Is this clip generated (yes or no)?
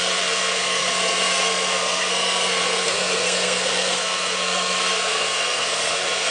yes